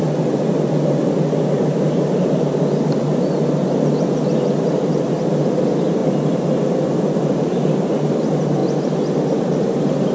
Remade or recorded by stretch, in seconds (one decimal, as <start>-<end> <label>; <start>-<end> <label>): 0.0-8.6 recorded; 8.6-9.4 remade; 9.4-10.1 recorded